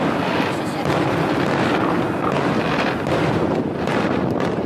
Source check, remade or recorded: recorded